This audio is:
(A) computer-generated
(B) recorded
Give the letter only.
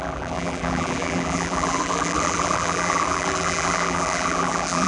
A